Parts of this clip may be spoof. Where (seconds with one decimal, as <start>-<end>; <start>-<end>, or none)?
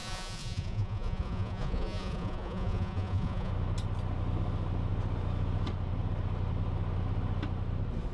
0.0-3.5